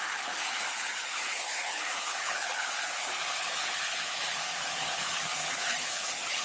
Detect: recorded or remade remade